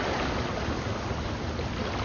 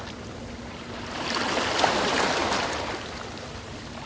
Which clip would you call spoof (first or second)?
second